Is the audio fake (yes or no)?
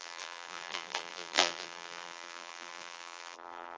yes